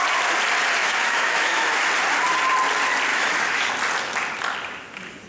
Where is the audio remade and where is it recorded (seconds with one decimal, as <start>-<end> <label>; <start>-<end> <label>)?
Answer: 0.0-0.8 recorded; 0.8-1.8 remade; 1.8-3.1 recorded; 3.1-3.7 remade; 3.7-5.3 recorded

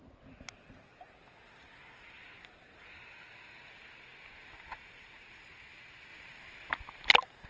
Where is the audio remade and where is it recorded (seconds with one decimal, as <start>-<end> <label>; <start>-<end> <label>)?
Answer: 0.0-7.5 recorded

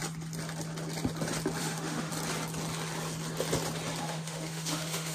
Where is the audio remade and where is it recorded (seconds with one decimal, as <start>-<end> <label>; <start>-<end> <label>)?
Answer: 0.0-1.6 recorded; 1.6-2.1 remade; 2.1-4.0 recorded; 4.0-5.1 remade